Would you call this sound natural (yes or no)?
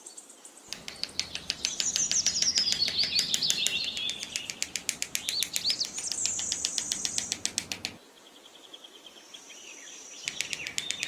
yes